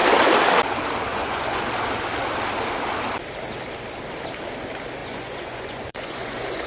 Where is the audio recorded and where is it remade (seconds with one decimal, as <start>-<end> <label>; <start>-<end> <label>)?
0.0-1.1 recorded; 1.1-1.6 remade; 1.6-5.0 recorded; 5.0-6.7 remade